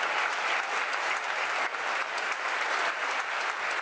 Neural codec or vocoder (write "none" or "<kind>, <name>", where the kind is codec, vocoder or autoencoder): none